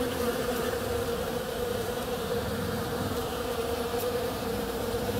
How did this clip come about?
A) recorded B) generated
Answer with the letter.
B